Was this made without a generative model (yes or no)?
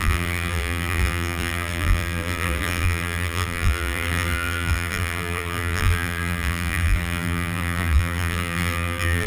no